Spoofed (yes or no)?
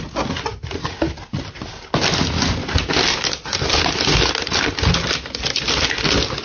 no